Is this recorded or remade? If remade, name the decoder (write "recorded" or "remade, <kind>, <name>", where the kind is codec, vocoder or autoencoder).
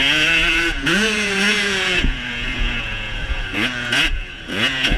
remade, vocoder, Vocos